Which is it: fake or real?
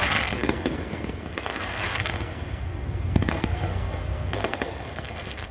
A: fake